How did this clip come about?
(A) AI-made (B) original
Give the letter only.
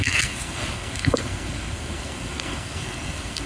A